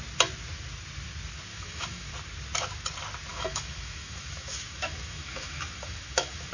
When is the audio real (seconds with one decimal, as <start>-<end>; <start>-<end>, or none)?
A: 0.0-1.5; 2.1-3.3